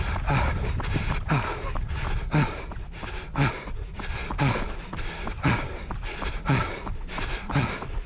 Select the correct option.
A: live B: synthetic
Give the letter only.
A